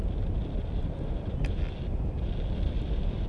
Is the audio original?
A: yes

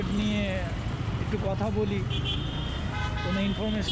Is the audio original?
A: yes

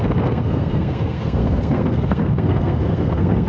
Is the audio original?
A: no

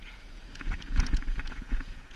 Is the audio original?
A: no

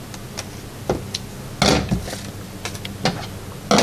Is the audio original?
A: yes